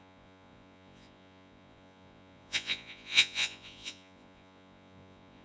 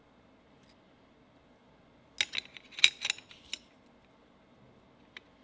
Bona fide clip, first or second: second